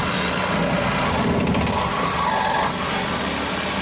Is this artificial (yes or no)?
no